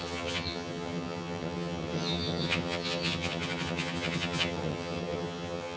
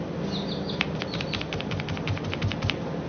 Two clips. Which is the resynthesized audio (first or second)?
first